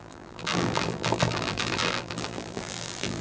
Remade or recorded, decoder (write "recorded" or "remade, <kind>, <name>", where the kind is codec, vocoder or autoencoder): remade, vocoder, BigVGAN v2